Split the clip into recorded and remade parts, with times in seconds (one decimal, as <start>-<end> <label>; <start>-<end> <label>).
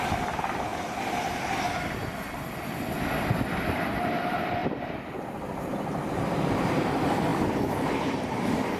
0.0-0.7 remade; 0.7-3.6 recorded; 3.6-8.8 remade